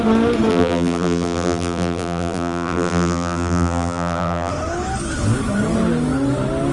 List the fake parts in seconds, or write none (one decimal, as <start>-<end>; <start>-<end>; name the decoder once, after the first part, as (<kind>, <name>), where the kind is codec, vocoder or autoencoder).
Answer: 0.5-4.5 (vocoder, BigVGAN v2)